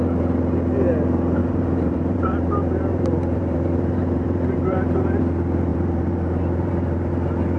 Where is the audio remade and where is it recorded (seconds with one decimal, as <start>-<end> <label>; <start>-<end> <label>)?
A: 0.0-1.4 recorded; 1.4-5.2 remade; 5.2-5.7 recorded; 5.7-7.1 remade; 7.1-7.6 recorded